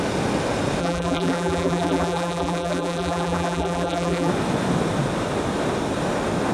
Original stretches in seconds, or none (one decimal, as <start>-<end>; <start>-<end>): 0.0-0.8; 4.3-6.5